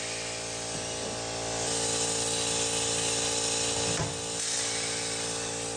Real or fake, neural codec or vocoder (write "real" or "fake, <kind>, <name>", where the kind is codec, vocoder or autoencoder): real